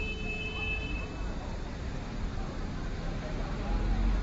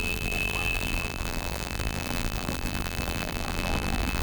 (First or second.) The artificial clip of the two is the second